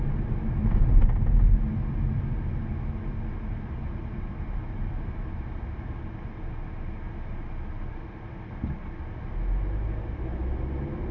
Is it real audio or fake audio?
real